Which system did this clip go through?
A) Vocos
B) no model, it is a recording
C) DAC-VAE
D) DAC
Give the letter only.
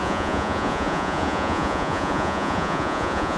A